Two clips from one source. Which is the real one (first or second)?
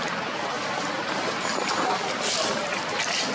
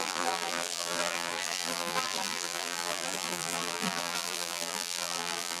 first